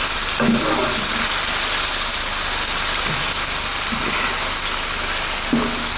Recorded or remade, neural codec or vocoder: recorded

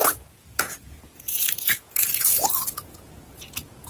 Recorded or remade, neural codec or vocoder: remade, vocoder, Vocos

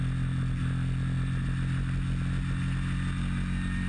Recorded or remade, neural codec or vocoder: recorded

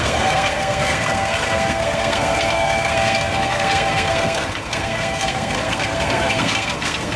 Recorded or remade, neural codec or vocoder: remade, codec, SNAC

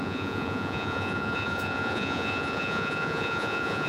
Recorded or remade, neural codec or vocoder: remade, vocoder, Vocos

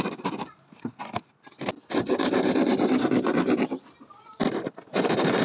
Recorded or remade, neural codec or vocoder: recorded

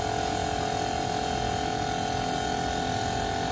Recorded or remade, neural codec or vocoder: recorded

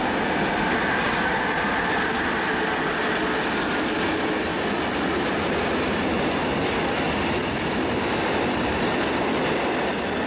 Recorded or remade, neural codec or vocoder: recorded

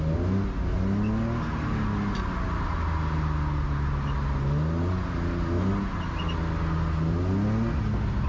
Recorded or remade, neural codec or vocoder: recorded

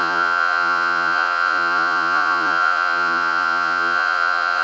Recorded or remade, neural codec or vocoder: remade, vocoder, Vocos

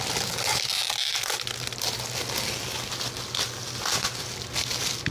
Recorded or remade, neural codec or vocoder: recorded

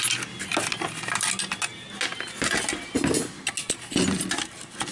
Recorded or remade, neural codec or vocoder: recorded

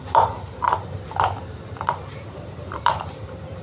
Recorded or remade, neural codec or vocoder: remade, vocoder, BigVGAN v2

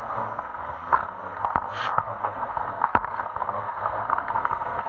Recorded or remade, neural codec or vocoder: remade, codec, SNAC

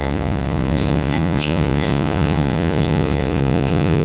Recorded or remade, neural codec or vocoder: remade, vocoder, Vocos